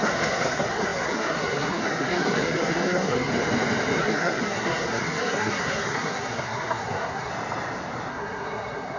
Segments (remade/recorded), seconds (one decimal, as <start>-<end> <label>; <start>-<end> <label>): 0.0-3.3 remade; 3.3-4.0 recorded; 4.0-7.3 remade; 7.3-8.1 recorded; 8.1-9.0 remade